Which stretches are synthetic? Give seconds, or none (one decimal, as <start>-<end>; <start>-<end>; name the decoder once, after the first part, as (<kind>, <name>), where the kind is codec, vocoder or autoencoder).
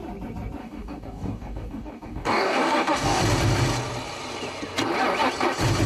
0.6-3.2 (codec, DAC)